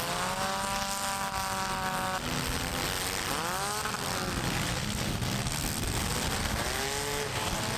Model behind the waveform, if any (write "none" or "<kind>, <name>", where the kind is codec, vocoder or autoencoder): none